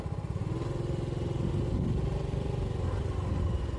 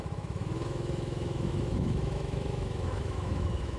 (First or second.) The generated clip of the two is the second